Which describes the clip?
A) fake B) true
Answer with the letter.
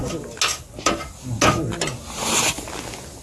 B